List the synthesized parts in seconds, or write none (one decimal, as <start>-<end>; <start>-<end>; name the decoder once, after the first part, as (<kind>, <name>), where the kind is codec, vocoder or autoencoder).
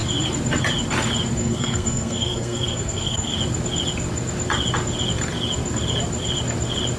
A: 1.4-3.3 (codec, SNAC)